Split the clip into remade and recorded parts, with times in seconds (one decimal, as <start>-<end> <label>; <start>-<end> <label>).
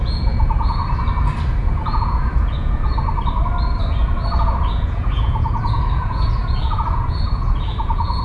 0.0-0.8 remade; 0.8-1.6 recorded; 1.6-2.8 remade; 2.8-4.7 recorded; 4.7-8.2 remade